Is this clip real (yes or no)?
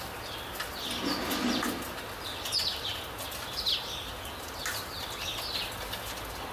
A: yes